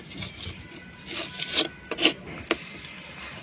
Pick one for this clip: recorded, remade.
recorded